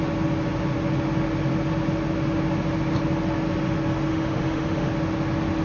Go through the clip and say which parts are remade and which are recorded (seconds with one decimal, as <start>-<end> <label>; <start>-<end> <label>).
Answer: 0.0-4.1 recorded; 4.1-4.9 remade; 4.9-5.6 recorded